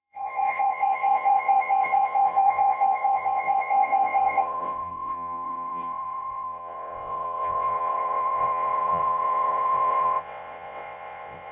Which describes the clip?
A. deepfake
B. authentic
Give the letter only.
A